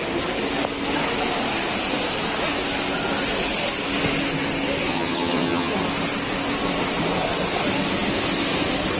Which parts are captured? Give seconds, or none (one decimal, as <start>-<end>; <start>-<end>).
0.0-4.9; 5.7-9.0